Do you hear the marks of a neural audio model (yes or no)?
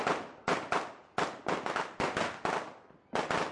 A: no